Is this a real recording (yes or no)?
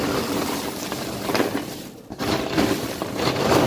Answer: no